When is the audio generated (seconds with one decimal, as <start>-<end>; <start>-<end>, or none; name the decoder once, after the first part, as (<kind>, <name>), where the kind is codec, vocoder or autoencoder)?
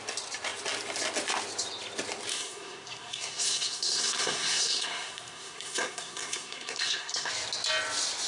2.3-7.3 (codec, SNAC)